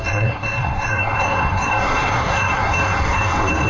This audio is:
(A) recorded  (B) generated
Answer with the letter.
B